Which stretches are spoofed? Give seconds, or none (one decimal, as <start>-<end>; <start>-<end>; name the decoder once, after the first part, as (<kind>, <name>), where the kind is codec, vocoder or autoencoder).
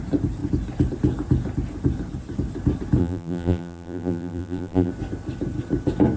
3.0-4.9 (vocoder, BigVGAN v2)